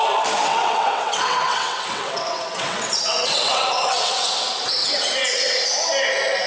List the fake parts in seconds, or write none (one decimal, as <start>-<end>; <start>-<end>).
0.4-4.3; 4.8-5.5